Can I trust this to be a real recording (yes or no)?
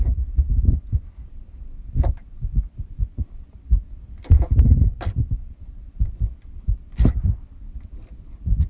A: yes